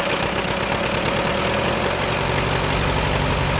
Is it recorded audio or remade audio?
recorded